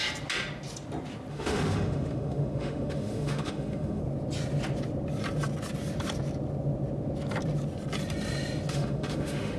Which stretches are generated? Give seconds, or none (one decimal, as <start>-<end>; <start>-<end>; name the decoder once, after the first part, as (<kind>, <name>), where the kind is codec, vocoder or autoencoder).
1.3-4.0 (autoencoder, DAC-VAE); 8.7-9.6